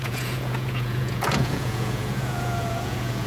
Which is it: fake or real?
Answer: fake